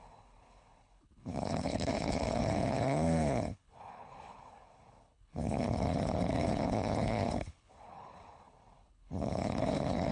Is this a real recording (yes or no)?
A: no